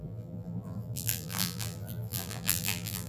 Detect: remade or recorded remade